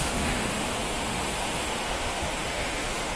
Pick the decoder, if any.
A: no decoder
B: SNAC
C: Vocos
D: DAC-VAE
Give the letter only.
D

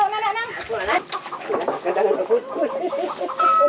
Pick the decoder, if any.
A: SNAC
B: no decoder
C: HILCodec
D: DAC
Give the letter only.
B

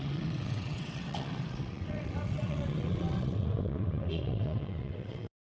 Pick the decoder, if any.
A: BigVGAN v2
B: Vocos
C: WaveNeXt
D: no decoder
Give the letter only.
C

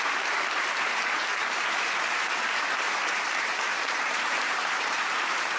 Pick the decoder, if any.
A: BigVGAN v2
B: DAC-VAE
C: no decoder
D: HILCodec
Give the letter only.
A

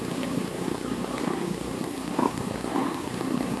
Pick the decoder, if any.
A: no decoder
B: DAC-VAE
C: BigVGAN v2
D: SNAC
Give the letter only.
D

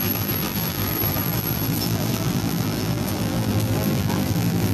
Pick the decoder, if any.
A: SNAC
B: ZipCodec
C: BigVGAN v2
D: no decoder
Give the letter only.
C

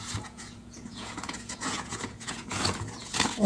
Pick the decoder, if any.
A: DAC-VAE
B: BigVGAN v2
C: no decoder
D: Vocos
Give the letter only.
D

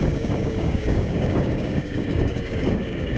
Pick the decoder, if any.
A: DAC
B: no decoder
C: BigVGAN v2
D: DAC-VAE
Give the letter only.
A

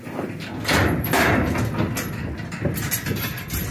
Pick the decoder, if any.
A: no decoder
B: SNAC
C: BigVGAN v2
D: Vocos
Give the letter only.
A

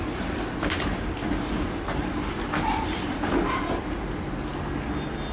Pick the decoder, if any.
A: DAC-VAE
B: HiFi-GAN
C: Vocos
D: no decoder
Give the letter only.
D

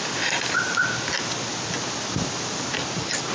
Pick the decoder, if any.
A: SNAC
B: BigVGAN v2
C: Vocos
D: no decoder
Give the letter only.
D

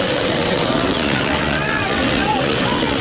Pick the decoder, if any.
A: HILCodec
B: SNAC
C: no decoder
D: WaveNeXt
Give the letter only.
D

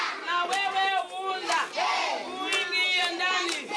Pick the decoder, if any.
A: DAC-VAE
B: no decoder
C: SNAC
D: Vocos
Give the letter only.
B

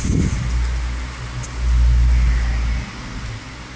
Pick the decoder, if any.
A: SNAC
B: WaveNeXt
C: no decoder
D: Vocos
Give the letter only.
C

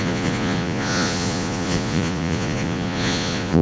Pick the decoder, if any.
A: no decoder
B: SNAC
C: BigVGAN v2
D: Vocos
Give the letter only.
D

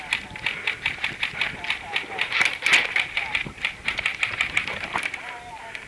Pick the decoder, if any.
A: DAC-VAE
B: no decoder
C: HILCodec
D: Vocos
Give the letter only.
B